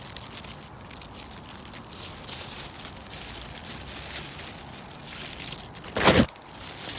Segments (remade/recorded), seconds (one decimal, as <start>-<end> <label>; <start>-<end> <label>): 0.0-7.0 recorded